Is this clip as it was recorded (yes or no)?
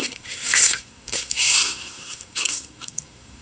no